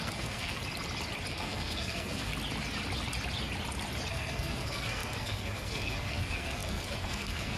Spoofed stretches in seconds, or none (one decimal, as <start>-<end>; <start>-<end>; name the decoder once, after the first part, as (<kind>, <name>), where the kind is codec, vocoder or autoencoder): 0.0-0.6 (codec, SNAC); 1.3-2.3; 4.1-7.6